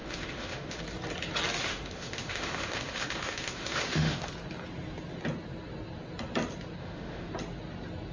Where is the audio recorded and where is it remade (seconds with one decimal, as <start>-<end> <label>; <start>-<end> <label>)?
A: 0.0-0.8 remade; 0.8-1.6 recorded; 1.6-4.3 remade; 4.3-6.8 recorded; 6.8-7.3 remade; 7.3-8.1 recorded